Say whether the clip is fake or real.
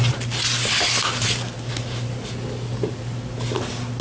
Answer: real